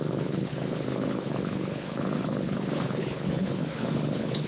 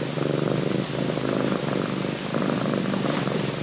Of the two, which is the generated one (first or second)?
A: first